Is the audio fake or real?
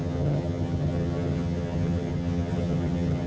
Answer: fake